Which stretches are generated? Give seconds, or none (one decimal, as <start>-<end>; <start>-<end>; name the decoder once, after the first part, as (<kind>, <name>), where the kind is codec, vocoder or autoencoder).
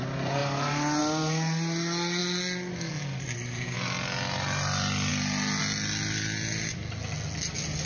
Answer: none